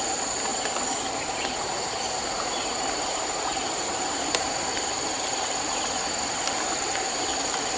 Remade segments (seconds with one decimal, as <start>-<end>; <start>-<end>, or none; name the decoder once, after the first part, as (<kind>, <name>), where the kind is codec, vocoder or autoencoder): 0.0-0.5 (vocoder, BigVGAN v2); 1.2-7.8